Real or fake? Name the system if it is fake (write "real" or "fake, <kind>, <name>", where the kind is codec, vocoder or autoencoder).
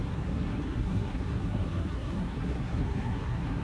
fake, codec, SNAC